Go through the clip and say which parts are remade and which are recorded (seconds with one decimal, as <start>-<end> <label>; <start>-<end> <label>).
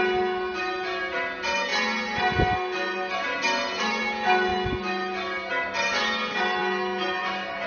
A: 0.0-7.7 recorded